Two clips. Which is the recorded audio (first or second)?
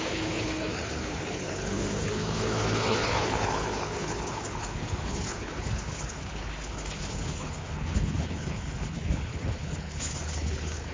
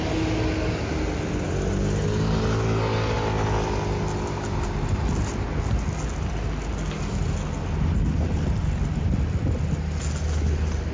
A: second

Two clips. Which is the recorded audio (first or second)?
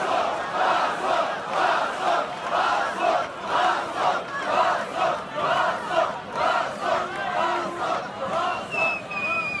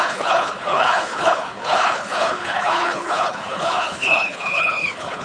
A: first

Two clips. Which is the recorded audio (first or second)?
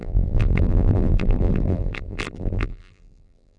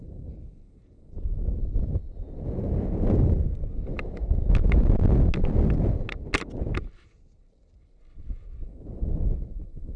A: second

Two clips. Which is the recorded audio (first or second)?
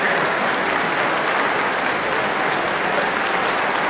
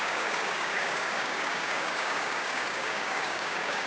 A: first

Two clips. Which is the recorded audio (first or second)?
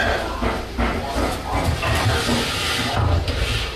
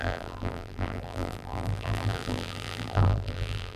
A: first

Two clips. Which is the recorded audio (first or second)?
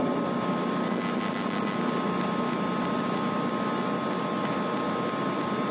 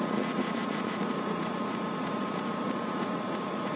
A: first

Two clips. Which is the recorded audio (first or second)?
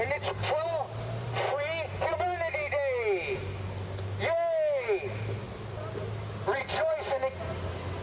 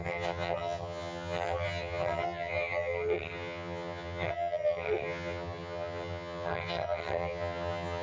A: first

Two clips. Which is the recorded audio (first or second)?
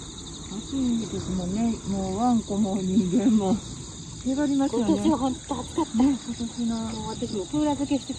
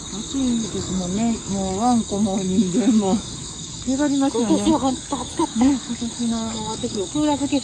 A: first